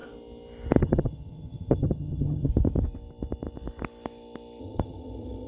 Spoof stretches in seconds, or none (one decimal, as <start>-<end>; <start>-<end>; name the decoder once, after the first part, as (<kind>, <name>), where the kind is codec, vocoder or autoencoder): 0.8-2.5 (vocoder, HiFi-GAN); 4.6-5.5